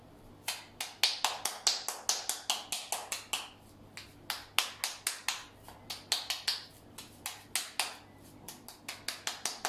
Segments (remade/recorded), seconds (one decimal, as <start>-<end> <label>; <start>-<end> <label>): 0.0-9.7 recorded